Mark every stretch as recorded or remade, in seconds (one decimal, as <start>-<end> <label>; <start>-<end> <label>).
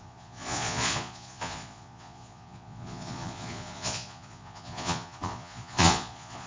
0.0-6.5 remade